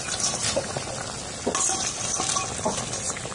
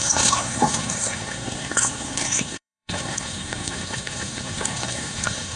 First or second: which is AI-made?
second